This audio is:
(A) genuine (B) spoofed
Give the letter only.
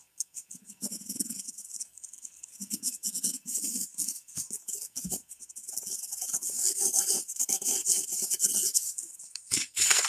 B